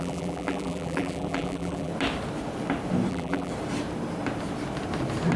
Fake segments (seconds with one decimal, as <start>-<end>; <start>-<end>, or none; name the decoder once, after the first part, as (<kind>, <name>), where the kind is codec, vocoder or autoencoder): 0.0-1.9 (vocoder, BigVGAN v2); 3.1-3.5